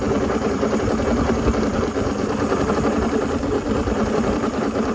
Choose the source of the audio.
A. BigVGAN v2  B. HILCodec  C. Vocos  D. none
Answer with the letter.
A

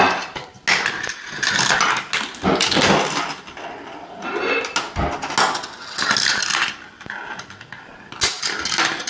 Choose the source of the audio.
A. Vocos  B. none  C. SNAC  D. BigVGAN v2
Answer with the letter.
B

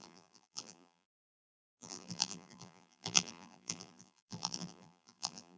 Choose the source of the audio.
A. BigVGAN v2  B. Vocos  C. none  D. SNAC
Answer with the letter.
A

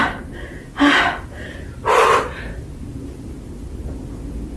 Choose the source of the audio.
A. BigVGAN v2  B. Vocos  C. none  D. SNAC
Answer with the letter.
A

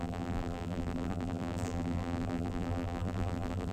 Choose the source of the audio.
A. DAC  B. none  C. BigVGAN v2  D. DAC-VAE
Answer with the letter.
C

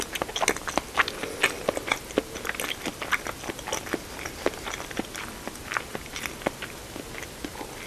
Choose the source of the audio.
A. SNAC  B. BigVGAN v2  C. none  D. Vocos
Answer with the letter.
C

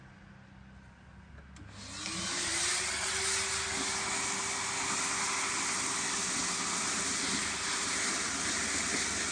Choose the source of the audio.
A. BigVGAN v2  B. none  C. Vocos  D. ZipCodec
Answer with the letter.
B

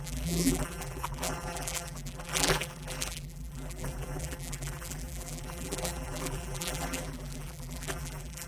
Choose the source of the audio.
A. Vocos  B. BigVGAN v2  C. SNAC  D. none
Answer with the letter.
B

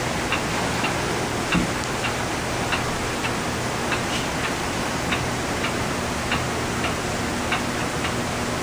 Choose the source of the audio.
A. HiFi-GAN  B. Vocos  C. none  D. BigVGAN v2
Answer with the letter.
C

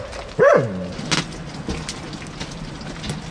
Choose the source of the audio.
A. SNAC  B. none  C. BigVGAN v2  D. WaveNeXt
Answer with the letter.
B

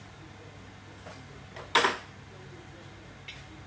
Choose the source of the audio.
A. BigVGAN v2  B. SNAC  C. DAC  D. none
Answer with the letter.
D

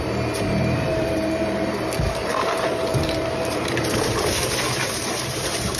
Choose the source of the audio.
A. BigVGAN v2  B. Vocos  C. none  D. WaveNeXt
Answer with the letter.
A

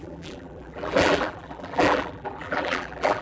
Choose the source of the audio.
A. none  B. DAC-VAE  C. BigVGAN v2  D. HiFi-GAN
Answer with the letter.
C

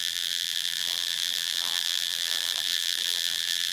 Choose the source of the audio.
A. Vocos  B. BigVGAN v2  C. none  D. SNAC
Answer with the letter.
B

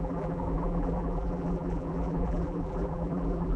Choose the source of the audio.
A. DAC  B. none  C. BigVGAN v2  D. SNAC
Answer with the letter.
C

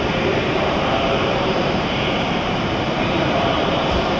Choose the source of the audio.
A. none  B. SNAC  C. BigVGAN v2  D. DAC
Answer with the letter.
C